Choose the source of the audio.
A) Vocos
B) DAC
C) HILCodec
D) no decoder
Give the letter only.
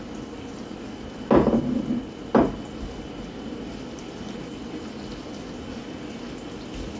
D